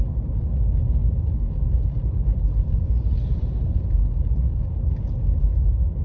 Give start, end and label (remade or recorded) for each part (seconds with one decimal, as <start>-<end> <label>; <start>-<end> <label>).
0.0-1.0 recorded; 1.0-4.6 remade; 4.6-6.0 recorded